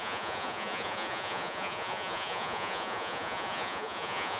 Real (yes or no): no